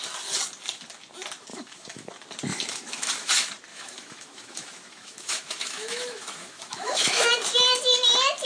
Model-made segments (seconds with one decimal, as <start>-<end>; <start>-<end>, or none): 1.5-2.1; 2.5-3.3; 3.7-7.3